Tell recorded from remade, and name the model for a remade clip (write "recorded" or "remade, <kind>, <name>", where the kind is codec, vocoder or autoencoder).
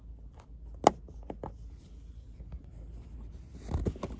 recorded